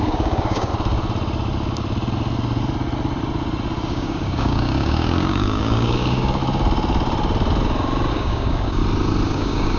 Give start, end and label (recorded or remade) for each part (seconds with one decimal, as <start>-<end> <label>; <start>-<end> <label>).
0.0-0.7 remade; 0.7-3.9 recorded; 3.9-6.4 remade; 6.4-8.1 recorded; 8.1-8.8 remade; 8.8-9.3 recorded; 9.3-9.8 remade